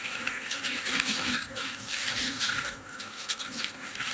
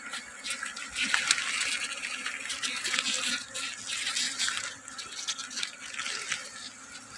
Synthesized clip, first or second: first